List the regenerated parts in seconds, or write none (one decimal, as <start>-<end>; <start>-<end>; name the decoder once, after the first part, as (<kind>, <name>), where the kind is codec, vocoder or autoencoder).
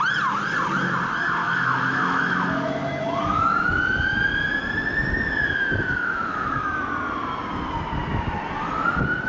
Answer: 1.4-3.2 (autoencoder, DAC-VAE); 5.6-6.8